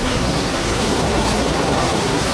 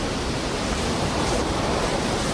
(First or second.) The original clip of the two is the second